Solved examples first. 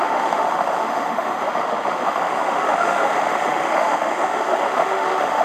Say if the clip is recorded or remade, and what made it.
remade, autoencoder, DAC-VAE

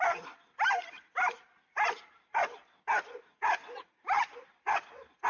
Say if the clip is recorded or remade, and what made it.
recorded